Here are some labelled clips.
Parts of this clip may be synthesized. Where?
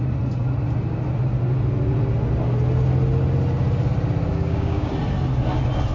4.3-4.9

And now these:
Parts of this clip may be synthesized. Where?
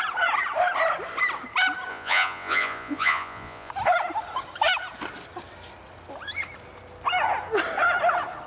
1.9-3.7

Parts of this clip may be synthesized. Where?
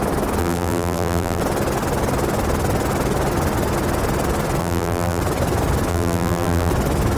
0.4-1.4; 4.6-5.2; 5.9-6.7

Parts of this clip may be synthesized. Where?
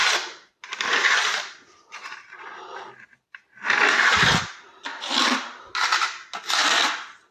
0.0-4.4; 4.9-5.6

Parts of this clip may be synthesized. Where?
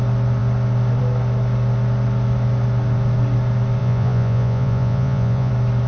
3.8-5.5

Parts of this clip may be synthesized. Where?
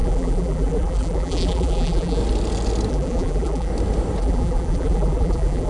0.0-2.2; 2.9-3.7; 4.2-5.7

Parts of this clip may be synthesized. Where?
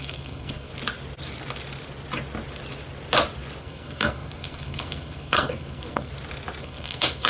0.0-0.7; 3.6-6.1; 6.6-7.3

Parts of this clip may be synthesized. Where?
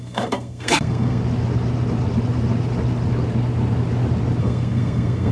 0.0-1.2; 4.4-5.3